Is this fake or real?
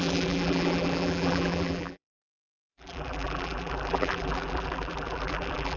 fake